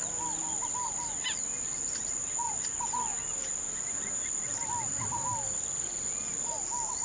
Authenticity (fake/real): real